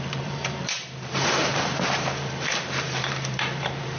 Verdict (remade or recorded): remade